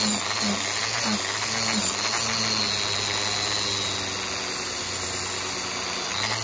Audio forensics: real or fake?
real